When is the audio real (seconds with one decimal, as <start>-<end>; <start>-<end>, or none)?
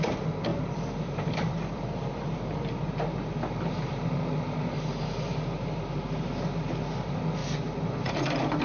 0.0-0.5; 2.9-7.4; 8.1-8.6